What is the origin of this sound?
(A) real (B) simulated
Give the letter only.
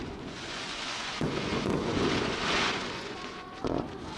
B